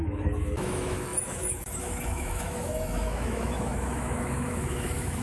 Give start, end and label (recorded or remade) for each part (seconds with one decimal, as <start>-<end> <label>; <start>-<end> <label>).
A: 0.0-5.2 remade